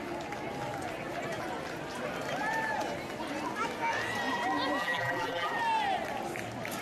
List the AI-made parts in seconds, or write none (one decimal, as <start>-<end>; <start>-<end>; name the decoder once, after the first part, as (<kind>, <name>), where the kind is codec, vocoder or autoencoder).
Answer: 4.8-5.5 (vocoder, BigVGAN v2)